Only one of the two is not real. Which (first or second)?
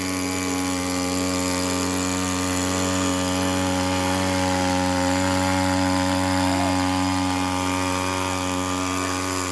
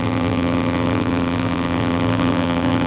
second